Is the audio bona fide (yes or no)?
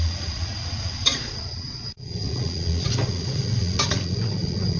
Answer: no